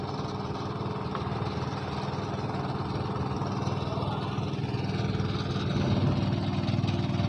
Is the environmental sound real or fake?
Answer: real